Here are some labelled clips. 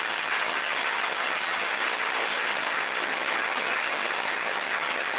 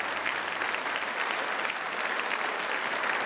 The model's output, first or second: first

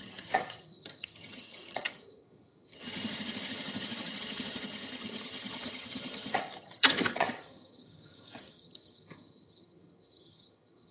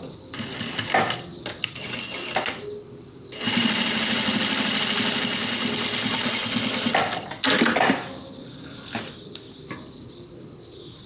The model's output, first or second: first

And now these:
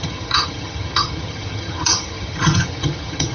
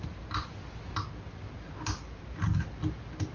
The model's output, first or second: first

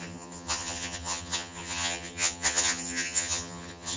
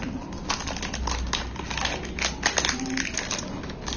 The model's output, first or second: first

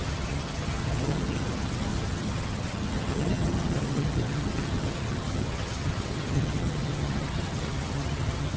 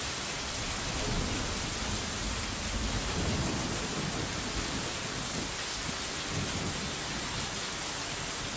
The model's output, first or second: first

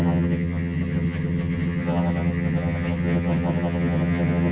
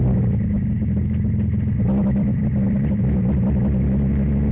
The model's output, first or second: first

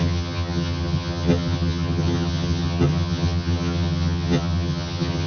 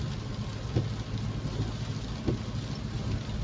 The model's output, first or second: first